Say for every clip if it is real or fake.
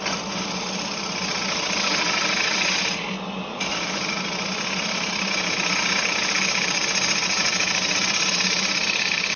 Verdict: real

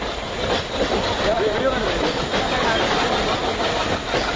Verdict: real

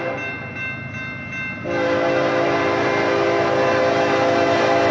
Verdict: real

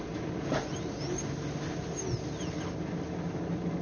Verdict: real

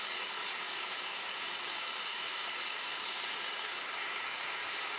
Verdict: fake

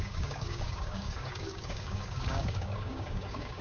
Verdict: fake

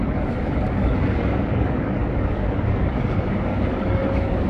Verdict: fake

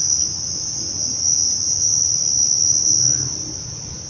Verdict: real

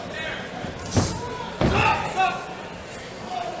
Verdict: real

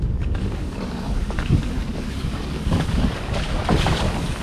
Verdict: fake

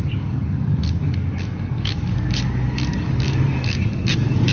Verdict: fake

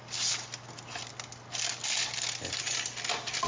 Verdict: real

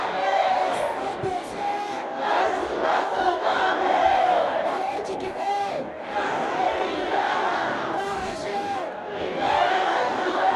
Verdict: fake